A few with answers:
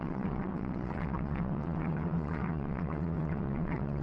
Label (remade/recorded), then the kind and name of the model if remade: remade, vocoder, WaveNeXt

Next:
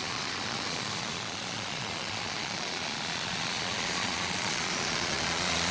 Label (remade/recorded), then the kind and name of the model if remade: remade, vocoder, Vocos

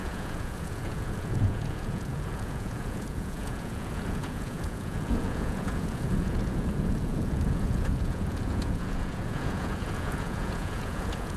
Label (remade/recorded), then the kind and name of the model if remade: remade, vocoder, Vocos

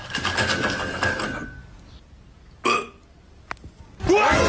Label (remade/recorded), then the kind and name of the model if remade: recorded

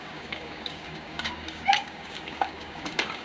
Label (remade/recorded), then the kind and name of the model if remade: remade, codec, DAC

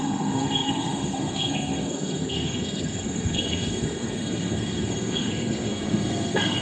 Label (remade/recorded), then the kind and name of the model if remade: remade, codec, SNAC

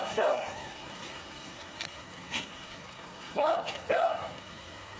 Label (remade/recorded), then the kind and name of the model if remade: remade, codec, SNAC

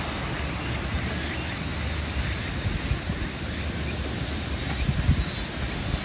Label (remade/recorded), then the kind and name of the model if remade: recorded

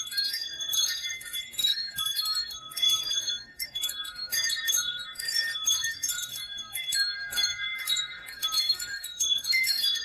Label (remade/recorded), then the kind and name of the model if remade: remade, codec, SNAC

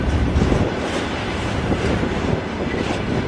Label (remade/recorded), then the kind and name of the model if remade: remade, vocoder, BigVGAN v2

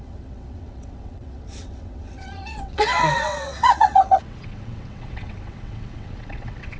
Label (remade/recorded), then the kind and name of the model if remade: remade, vocoder, WaveNeXt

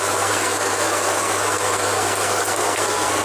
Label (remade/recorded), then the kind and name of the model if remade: remade, codec, SNAC